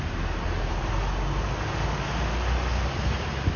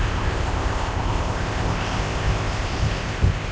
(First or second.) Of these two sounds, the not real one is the second